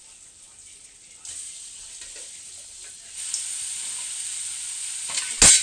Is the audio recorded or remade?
recorded